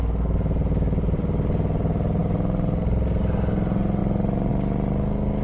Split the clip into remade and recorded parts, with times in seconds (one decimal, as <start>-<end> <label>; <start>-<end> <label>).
0.0-5.4 recorded